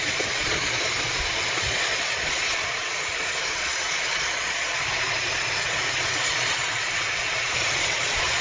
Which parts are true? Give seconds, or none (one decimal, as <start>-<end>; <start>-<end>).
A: none